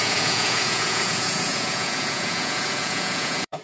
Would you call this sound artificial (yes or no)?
yes